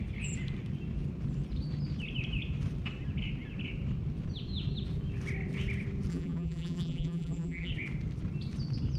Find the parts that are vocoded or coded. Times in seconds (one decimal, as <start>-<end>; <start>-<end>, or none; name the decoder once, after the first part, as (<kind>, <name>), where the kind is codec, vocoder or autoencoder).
6.1-7.7 (vocoder, BigVGAN v2)